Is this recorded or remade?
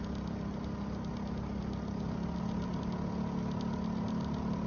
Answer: recorded